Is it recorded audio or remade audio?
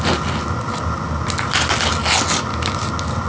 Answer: recorded